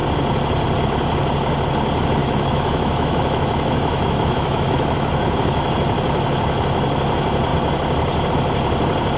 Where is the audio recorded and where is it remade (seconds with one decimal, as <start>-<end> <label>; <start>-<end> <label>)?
0.0-2.2 recorded; 2.2-5.7 remade; 5.7-9.2 recorded